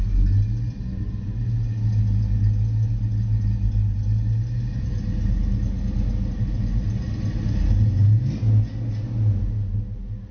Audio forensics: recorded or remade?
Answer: recorded